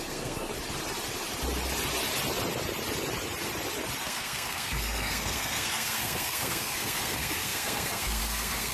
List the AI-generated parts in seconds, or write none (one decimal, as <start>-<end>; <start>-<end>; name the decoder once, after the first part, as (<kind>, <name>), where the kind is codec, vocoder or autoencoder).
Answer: 0.0-0.5 (codec, SNAC); 4.0-8.7